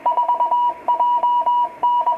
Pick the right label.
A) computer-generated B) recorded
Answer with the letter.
A